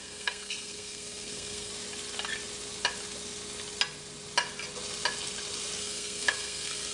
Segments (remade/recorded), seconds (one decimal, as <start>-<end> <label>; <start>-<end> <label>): 0.0-1.7 remade; 1.7-5.8 recorded; 5.8-6.9 remade